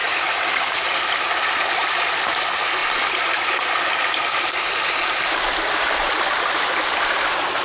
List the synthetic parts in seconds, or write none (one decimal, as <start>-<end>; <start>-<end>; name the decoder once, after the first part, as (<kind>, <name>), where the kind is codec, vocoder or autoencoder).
none